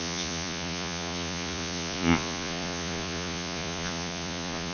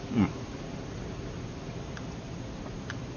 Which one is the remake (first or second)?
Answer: first